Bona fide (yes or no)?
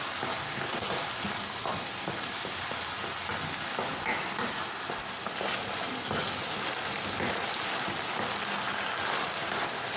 yes